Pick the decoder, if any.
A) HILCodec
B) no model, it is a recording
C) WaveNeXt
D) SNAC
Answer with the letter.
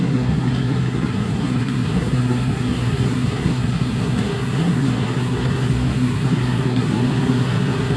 D